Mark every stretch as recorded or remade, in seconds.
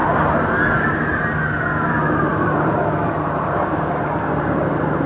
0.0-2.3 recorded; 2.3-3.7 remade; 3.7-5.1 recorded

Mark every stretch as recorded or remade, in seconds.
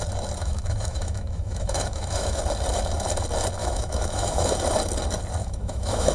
0.0-0.4 recorded; 0.4-2.4 remade; 2.4-3.6 recorded; 3.6-4.5 remade; 4.5-5.4 recorded; 5.4-6.1 remade